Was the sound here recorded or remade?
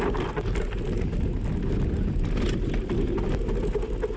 recorded